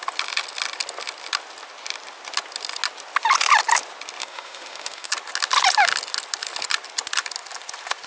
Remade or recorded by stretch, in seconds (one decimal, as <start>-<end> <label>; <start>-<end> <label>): 0.0-4.2 recorded; 4.2-5.1 remade; 5.1-8.1 recorded